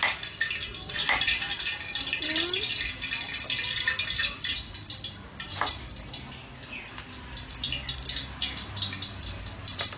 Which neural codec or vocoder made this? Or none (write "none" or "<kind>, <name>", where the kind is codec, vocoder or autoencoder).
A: none